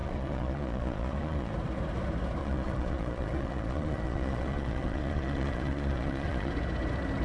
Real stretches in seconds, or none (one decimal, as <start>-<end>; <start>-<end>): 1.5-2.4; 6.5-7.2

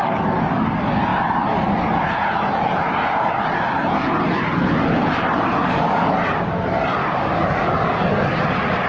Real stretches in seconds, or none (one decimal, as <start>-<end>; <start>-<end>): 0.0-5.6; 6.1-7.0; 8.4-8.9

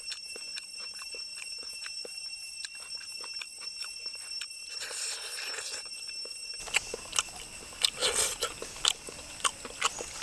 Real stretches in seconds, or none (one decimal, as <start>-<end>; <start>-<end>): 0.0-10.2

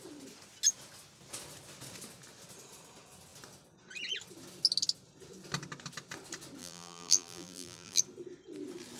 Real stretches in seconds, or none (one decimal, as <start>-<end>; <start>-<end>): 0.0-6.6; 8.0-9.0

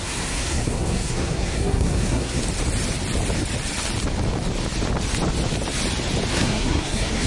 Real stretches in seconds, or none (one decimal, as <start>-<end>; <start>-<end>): 2.4-6.3

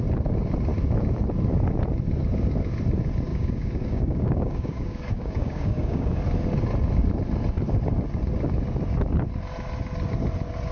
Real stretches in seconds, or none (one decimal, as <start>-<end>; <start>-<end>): 0.0-3.3; 6.2-10.7